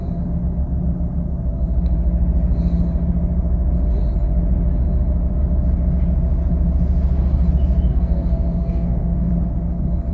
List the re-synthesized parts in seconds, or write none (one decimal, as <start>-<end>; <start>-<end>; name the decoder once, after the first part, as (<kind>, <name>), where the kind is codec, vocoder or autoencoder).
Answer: 7.9-9.3 (codec, SNAC)